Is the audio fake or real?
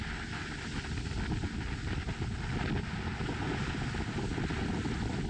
real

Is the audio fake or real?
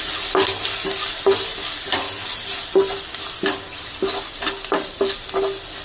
real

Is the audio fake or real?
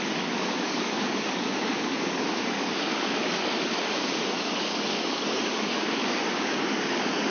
fake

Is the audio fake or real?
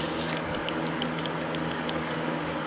fake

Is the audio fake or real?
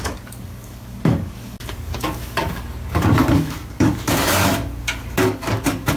fake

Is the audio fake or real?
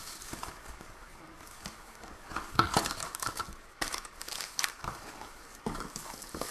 fake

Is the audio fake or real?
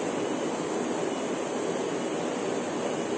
real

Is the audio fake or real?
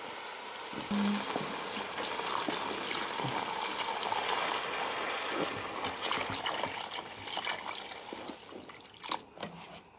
real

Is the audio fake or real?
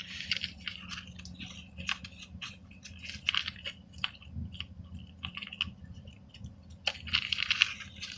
real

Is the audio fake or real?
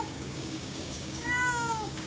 fake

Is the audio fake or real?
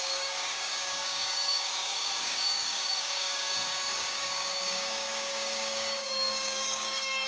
fake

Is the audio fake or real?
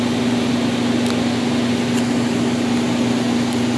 real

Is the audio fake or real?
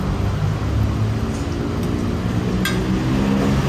real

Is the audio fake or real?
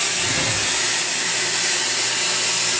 real